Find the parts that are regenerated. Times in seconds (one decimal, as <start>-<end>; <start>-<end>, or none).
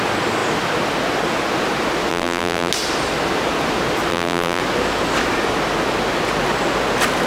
2.1-2.7; 4.1-4.6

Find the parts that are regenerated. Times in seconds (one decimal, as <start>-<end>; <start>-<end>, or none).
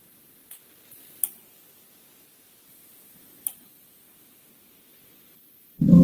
4.9-6.0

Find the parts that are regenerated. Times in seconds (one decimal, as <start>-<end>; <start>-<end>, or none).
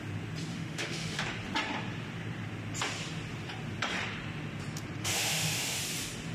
0.5-1.2; 5.0-5.8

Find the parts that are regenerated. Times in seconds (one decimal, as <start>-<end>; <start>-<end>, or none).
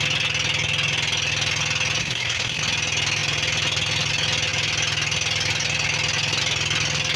2.0-2.6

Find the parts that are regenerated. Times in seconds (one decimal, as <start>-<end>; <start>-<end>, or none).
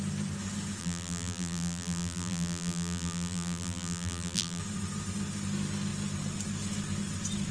0.8-4.6